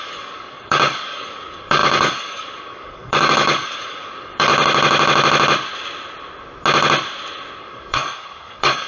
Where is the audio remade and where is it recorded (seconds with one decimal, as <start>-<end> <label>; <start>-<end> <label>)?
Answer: 0.0-4.5 remade; 4.5-7.6 recorded; 7.6-8.9 remade